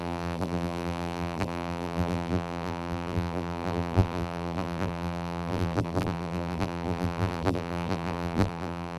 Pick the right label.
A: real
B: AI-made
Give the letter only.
B